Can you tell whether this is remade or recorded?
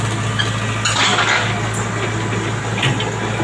recorded